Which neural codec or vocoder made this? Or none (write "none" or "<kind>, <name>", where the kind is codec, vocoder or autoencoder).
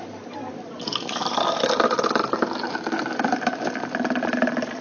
none